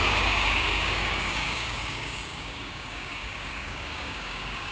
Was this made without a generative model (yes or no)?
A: no